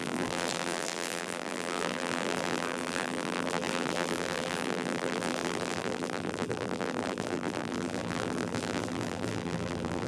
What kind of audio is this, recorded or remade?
remade